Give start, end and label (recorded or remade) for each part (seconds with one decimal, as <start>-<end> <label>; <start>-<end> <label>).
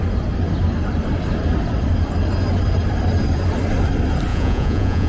0.0-4.3 recorded; 4.3-5.1 remade